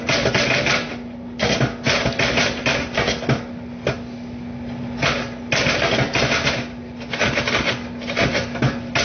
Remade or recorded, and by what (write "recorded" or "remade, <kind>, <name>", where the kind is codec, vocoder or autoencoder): recorded